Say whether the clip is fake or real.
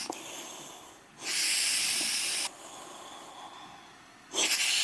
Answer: real